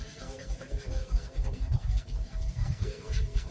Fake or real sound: fake